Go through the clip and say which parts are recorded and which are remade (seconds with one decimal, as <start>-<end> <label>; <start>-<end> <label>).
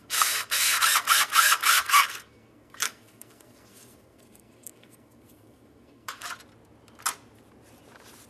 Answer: 0.0-6.2 remade; 6.2-8.3 recorded